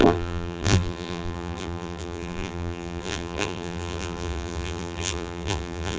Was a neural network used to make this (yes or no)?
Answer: yes